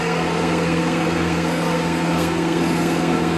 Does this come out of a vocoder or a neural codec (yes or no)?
yes